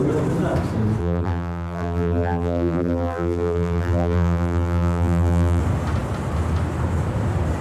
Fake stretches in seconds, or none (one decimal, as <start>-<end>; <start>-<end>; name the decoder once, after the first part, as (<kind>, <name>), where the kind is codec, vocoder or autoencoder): 1.0-5.6 (vocoder, BigVGAN v2)